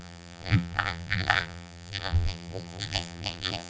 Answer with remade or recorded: remade